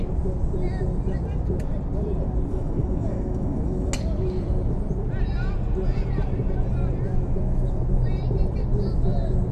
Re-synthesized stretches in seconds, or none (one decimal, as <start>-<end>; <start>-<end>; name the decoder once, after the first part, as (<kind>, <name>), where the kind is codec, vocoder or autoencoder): 2.5-3.9 (autoencoder, DAC-VAE)